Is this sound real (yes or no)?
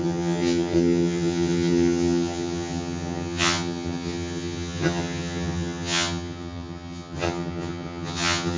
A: no